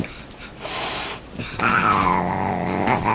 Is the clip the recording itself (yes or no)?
yes